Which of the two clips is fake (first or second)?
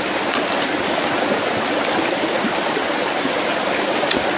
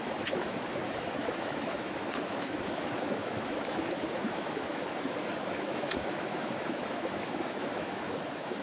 second